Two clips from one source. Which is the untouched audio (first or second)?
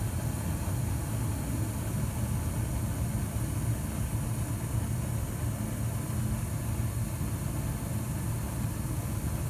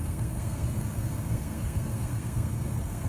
first